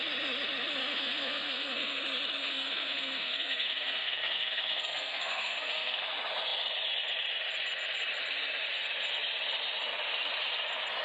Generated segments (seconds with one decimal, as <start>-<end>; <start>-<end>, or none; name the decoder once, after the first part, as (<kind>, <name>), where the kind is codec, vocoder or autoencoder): 0.8-2.0 (codec, SNAC); 2.4-6.0